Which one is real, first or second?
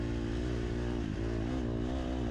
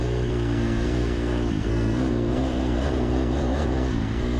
first